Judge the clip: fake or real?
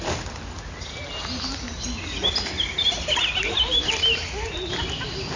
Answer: real